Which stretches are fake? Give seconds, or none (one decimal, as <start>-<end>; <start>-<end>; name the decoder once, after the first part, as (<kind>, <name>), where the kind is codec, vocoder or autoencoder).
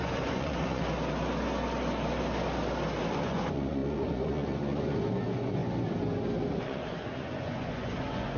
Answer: 0.0-0.8 (vocoder, Vocos); 3.1-5.6; 6.5-8.4